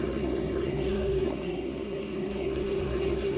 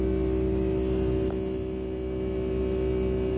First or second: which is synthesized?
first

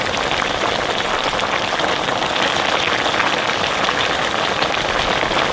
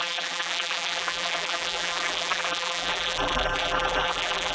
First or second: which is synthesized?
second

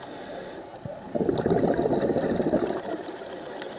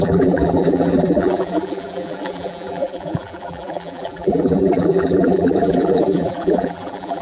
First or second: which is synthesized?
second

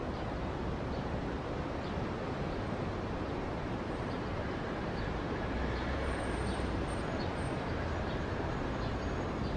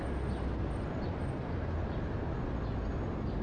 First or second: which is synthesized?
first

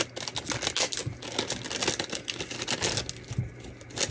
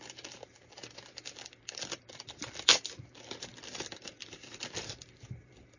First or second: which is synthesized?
second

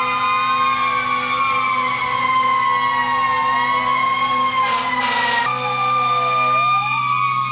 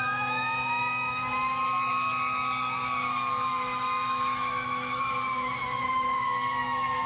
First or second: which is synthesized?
second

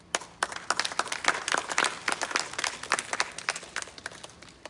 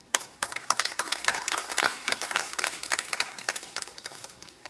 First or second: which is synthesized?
second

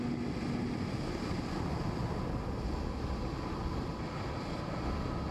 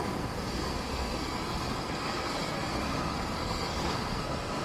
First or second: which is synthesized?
second